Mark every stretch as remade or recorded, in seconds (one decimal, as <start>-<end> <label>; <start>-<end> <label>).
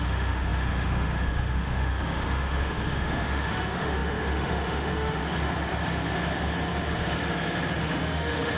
0.0-5.2 remade; 5.2-7.8 recorded; 7.8-8.6 remade